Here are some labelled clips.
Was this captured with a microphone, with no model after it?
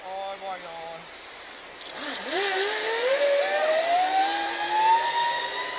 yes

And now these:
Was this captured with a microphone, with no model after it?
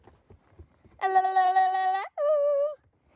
yes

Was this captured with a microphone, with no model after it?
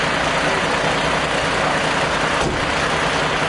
yes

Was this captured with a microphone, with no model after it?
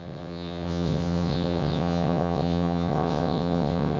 no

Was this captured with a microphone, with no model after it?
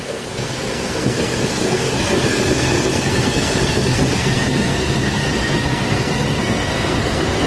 no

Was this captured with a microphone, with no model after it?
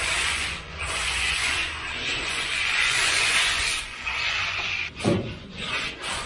no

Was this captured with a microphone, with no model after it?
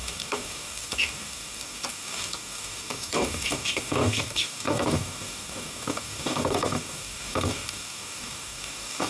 no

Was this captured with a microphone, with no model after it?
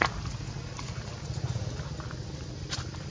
yes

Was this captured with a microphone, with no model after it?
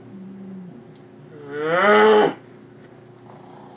yes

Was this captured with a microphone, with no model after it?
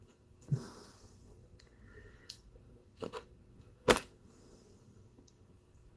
no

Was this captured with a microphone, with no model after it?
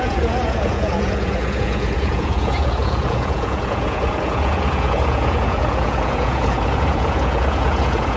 no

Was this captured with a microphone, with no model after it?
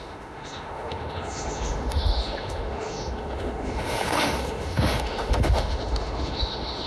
no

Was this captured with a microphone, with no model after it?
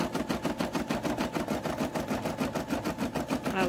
yes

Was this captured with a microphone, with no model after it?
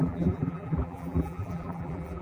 no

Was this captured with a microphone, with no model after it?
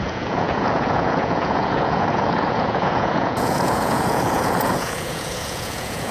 no